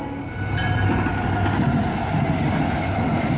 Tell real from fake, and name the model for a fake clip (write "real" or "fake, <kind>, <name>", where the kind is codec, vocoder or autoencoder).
real